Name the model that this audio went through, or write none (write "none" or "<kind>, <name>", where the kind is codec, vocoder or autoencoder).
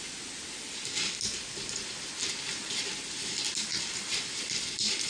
none